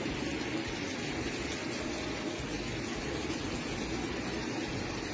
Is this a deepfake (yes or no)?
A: no